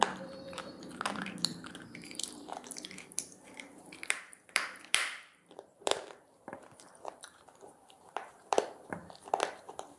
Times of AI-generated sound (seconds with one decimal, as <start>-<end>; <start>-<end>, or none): 0.0-9.0; 9.6-10.0